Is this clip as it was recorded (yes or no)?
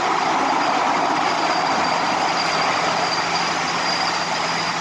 yes